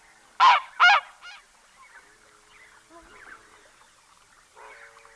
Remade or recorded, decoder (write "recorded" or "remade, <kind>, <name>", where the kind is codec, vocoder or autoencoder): recorded